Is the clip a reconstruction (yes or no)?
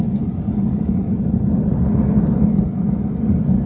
no